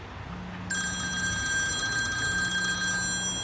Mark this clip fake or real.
real